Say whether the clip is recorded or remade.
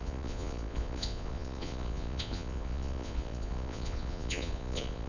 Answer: remade